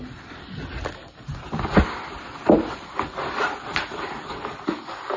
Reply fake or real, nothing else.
real